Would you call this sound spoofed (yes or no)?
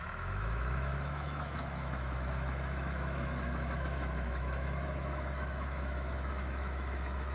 yes